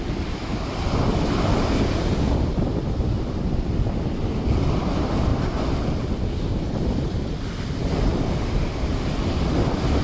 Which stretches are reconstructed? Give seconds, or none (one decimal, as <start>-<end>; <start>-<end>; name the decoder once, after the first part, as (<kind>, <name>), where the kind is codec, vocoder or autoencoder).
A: 0.0-0.5 (vocoder, BigVGAN v2); 2.4-10.0

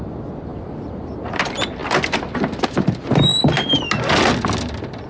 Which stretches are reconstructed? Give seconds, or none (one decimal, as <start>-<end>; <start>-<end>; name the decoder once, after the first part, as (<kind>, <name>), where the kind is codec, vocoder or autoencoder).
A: 0.5-1.4 (vocoder, BigVGAN v2)

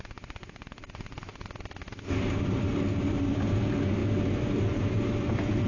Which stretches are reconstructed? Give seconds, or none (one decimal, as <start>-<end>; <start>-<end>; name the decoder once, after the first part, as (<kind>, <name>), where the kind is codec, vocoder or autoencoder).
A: 0.0-1.3 (vocoder, BigVGAN v2); 2.3-5.7

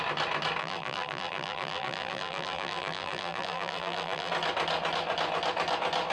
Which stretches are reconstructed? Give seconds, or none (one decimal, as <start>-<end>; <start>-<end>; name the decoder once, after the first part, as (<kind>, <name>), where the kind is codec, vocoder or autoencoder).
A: 0.6-4.3 (vocoder, BigVGAN v2)

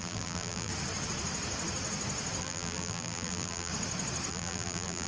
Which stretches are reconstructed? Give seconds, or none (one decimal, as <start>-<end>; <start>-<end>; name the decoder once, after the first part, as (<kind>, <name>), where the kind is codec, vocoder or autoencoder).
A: 0.0-0.7 (vocoder, BigVGAN v2); 2.4-3.7; 4.3-5.1

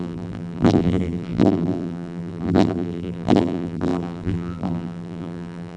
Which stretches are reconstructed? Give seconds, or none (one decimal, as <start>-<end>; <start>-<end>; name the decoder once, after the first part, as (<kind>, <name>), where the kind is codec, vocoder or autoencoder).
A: 0.0-5.8 (vocoder, BigVGAN v2)

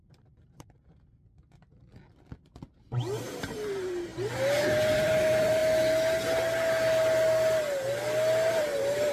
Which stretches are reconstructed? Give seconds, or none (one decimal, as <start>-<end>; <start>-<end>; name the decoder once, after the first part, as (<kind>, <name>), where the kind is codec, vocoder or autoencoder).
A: 0.0-1.7 (vocoder, BigVGAN v2); 3.2-5.6; 8.5-9.1

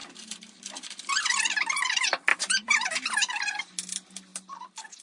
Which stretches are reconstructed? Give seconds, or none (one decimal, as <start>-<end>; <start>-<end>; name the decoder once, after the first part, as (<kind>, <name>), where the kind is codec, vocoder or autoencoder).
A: 0.0-1.2 (vocoder, BigVGAN v2); 2.3-3.6